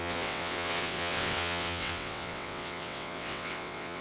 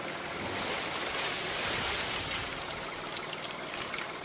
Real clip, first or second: second